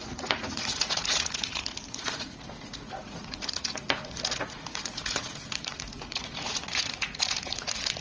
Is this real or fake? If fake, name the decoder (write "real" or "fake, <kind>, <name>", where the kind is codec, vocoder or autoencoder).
fake, vocoder, Vocos